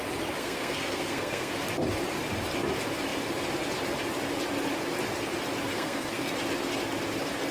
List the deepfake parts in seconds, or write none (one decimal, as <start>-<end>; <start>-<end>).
0.4-1.5; 5.7-6.3